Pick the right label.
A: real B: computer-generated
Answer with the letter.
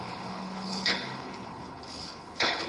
B